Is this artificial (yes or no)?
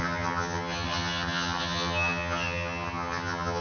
yes